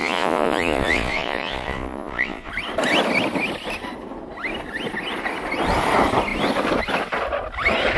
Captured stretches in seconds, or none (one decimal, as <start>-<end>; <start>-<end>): 2.5-8.0